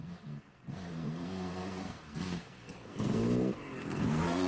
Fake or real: fake